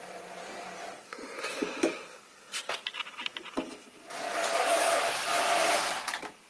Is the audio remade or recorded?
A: recorded